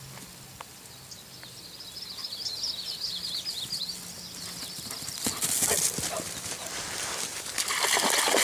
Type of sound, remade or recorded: recorded